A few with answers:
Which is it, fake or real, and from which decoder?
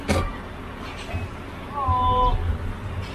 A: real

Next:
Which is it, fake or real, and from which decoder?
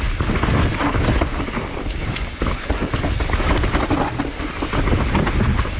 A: real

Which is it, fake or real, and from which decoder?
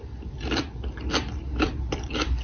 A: real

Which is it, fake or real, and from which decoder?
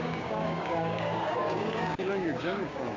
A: fake, codec, DAC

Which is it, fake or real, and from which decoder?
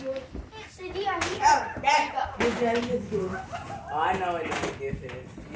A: real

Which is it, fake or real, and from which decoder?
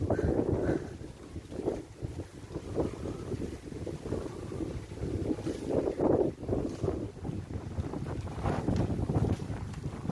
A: real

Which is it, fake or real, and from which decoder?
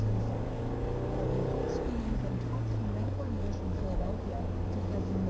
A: fake, codec, DAC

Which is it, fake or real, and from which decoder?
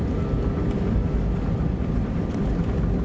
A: real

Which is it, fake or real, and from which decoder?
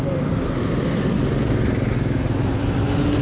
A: real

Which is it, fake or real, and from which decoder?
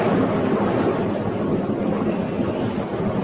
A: real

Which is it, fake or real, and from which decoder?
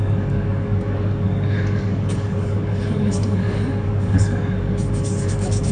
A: fake, codec, DAC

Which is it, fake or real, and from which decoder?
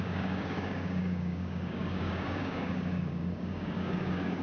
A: fake, codec, DAC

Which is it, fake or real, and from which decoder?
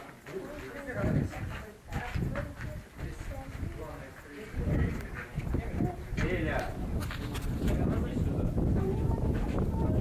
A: real